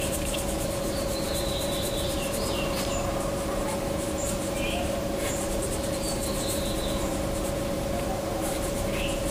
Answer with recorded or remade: remade